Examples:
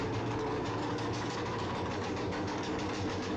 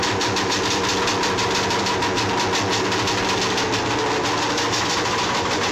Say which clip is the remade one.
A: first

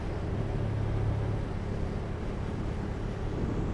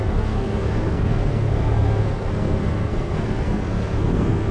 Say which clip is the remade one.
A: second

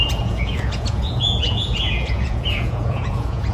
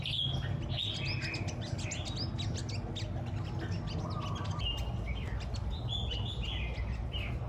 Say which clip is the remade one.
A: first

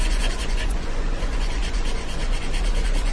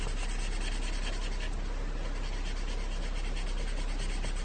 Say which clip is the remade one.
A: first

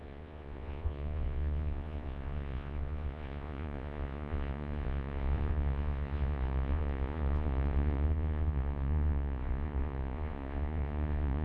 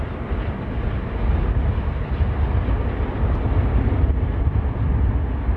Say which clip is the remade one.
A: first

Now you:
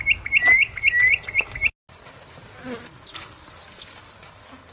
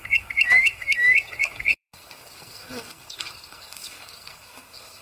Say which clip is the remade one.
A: second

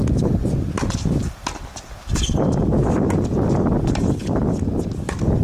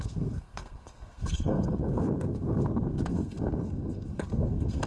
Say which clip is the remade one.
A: second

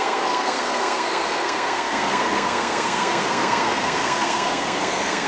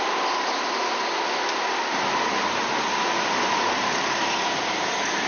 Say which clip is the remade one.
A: first